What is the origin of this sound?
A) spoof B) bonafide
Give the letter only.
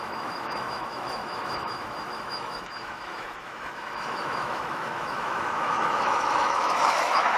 A